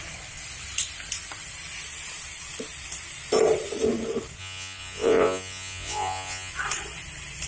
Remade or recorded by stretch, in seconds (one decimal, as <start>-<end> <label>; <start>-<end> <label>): 0.0-4.4 recorded; 4.4-6.5 remade; 6.5-7.5 recorded